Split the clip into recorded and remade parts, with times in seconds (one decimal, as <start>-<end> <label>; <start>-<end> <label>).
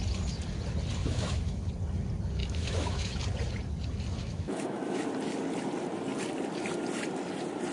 0.0-1.0 recorded; 1.0-1.7 remade; 1.7-2.4 recorded; 2.4-3.2 remade; 3.2-4.2 recorded; 4.2-5.0 remade; 5.0-7.7 recorded